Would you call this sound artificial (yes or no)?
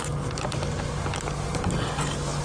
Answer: no